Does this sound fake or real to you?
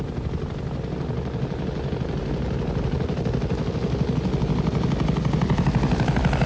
real